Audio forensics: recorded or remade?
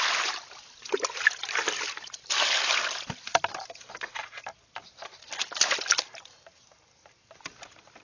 recorded